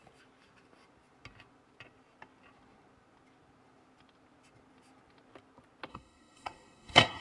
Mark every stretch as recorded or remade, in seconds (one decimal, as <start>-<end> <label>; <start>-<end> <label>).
0.0-5.9 recorded; 5.9-7.2 remade